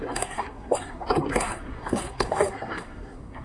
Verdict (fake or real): fake